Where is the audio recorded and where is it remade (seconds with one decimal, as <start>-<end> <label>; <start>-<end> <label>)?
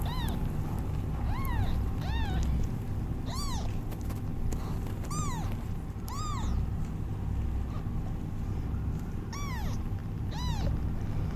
0.0-11.4 recorded